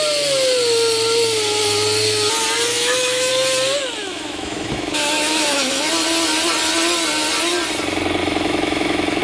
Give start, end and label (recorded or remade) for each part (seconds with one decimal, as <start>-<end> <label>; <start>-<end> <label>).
0.0-2.7 recorded; 2.7-3.3 remade; 3.3-4.0 recorded; 4.0-5.9 remade; 5.9-8.2 recorded; 8.2-9.2 remade